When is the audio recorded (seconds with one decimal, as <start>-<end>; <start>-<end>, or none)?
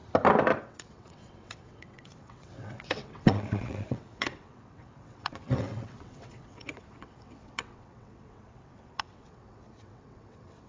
0.0-0.6